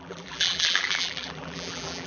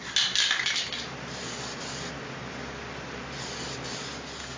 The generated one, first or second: first